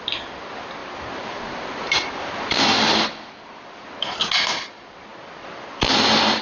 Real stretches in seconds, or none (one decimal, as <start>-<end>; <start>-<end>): 0.0-0.8; 3.7-6.4